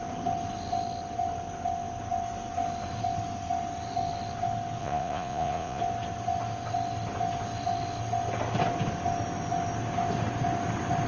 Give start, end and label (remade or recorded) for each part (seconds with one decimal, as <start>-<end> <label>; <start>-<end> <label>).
0.0-4.8 recorded; 4.8-5.8 remade; 5.8-11.1 recorded